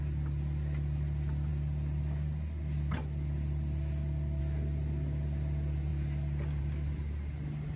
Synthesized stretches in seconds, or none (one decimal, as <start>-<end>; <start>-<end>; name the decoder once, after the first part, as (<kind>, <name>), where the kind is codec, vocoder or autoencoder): none

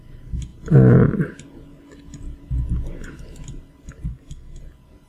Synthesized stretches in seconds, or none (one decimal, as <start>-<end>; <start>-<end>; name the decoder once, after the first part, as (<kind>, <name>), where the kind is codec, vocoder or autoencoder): 4.1-4.6 (codec, SNAC)